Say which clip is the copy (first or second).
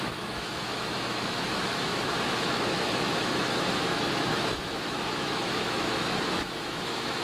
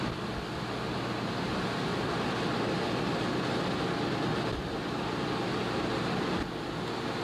first